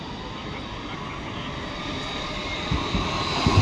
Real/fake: fake